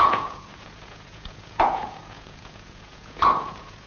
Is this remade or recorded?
remade